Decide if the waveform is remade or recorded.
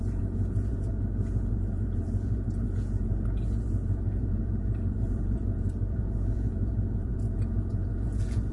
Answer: remade